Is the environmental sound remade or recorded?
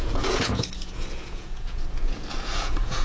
remade